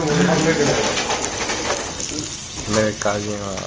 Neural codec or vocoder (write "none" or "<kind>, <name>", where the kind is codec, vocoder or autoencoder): none